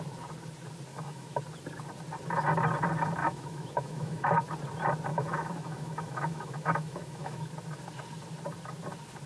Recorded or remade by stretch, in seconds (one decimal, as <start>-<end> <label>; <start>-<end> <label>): 0.0-0.9 recorded; 0.9-1.4 remade; 1.4-3.2 recorded; 3.2-4.4 remade; 4.4-5.1 recorded; 5.1-7.4 remade; 7.4-9.3 recorded